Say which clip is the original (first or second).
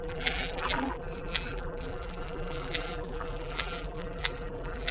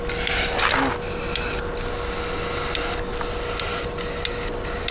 second